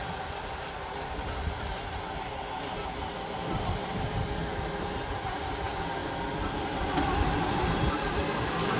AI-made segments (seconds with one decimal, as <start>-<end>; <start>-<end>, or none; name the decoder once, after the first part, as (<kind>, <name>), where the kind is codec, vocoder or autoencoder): none